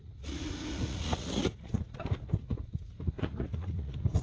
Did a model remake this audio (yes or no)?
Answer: yes